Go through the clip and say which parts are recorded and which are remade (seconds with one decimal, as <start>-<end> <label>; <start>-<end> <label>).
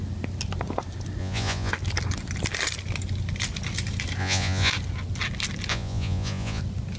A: 0.0-1.2 recorded; 1.2-1.7 remade; 1.7-4.2 recorded; 4.2-4.7 remade; 4.7-5.7 recorded; 5.7-6.6 remade; 6.6-7.0 recorded